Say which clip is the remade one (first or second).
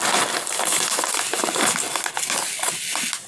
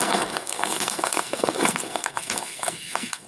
second